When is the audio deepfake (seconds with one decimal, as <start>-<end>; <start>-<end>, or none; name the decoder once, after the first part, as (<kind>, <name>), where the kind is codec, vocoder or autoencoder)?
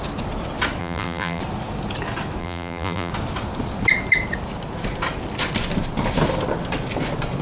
0.8-1.4 (vocoder, BigVGAN v2); 2.4-3.1